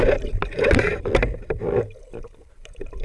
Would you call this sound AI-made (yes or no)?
no